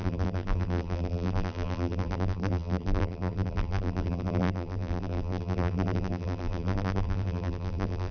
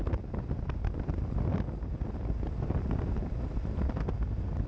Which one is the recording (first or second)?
second